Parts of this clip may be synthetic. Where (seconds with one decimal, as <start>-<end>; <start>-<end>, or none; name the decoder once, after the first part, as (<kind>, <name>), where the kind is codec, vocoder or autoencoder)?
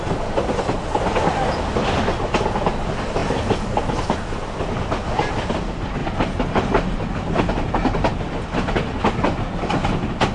none